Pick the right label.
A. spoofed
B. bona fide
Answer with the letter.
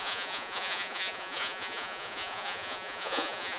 A